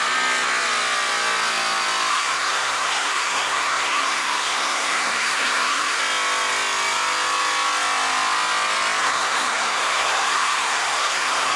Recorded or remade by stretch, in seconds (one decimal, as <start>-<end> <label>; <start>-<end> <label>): 0.0-2.1 recorded; 2.1-6.0 remade; 6.0-9.0 recorded; 9.0-11.6 remade